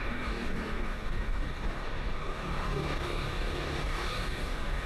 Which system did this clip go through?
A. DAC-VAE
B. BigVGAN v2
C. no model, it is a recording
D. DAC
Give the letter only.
D